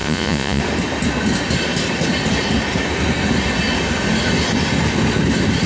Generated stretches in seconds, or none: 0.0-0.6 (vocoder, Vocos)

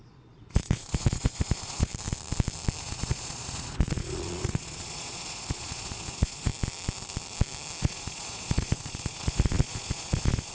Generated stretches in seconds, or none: 0.0-1.9 (vocoder, Vocos); 2.8-6.5; 7.8-10.5